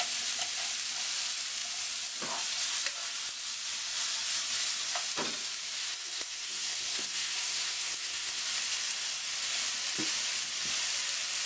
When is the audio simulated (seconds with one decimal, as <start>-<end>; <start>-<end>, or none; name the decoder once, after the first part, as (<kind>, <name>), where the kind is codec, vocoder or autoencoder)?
5.8-8.4 (codec, SNAC)